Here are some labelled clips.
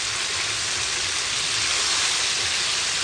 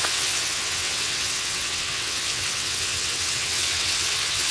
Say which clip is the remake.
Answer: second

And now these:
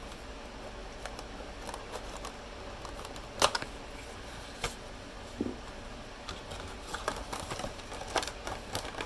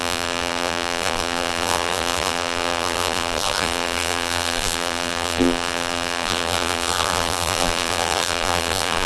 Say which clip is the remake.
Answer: second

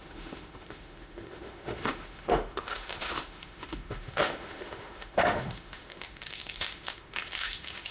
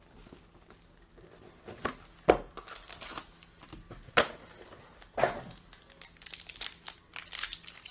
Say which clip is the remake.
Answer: first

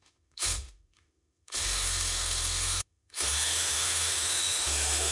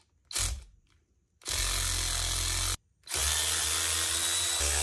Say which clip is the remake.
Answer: first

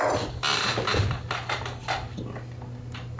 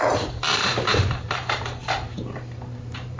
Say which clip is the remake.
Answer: second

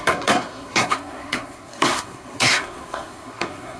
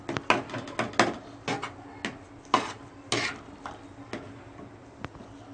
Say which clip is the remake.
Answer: first